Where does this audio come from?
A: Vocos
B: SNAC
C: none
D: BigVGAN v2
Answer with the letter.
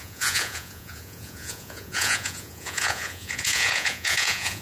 A